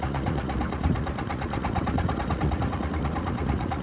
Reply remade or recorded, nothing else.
remade